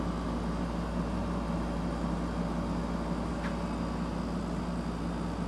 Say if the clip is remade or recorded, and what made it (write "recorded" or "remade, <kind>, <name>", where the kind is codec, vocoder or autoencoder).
recorded